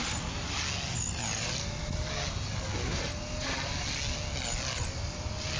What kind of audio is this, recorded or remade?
recorded